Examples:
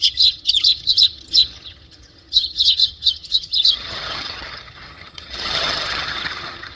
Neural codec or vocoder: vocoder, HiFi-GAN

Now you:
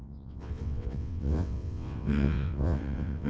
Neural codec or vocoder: vocoder, WaveNeXt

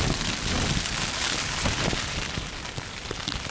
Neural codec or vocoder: none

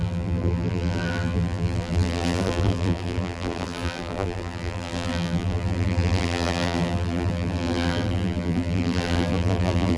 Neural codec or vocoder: vocoder, BigVGAN v2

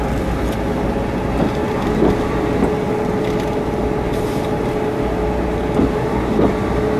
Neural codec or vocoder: none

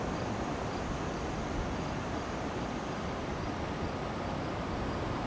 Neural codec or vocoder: none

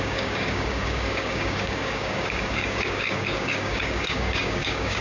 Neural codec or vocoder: codec, DAC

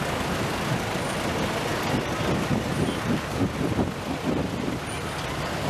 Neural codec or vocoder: none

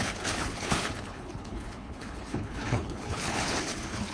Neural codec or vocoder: codec, HILCodec